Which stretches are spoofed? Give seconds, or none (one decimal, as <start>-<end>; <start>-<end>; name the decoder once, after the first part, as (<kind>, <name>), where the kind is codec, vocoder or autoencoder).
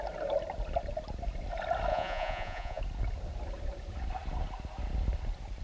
1.9-2.8 (vocoder, Vocos)